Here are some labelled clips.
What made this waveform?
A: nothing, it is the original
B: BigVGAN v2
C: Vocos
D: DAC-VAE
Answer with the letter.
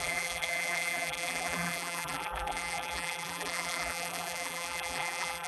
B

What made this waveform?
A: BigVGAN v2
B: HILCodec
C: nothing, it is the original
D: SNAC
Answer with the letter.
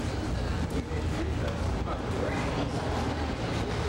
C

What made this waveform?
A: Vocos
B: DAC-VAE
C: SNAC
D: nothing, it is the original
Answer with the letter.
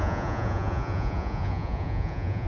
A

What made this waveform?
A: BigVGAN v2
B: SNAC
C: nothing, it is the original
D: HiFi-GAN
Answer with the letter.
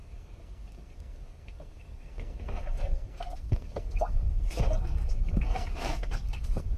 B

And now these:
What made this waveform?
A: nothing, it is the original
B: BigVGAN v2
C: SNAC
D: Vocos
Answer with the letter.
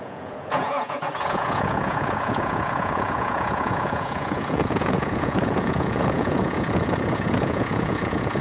D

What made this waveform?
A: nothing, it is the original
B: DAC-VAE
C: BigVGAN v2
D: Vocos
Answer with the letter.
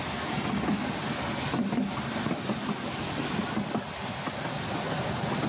A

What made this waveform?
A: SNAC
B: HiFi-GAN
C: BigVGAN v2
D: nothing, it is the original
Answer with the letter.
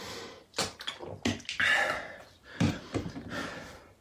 D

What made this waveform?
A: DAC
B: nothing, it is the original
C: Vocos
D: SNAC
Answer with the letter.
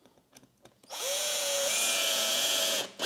C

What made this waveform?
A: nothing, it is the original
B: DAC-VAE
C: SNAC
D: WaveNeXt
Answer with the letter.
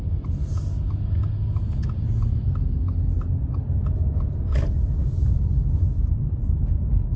A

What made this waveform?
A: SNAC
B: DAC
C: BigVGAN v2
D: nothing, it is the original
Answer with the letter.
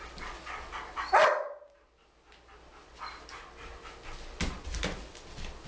D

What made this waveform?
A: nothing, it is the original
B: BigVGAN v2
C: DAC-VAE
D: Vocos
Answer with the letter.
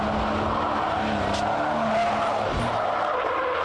A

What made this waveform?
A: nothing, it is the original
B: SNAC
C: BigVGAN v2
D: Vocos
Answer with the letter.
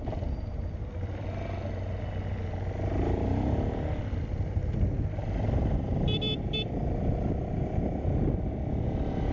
A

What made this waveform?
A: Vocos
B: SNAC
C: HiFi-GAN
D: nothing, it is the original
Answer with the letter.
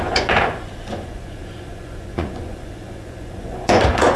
A